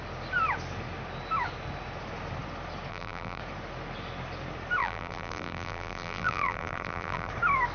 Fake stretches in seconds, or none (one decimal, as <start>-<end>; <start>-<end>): 2.9-3.4; 4.8-7.3